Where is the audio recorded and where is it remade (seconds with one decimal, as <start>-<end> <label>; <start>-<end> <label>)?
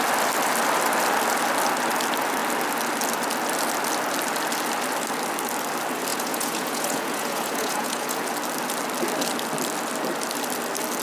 0.0-6.1 recorded; 6.1-8.2 remade; 8.2-11.0 recorded